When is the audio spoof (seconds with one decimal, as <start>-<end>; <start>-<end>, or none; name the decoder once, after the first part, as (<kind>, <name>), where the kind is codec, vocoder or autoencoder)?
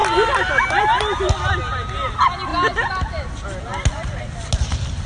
none